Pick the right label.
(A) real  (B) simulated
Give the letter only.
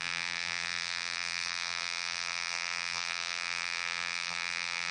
B